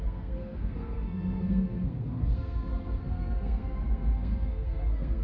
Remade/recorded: remade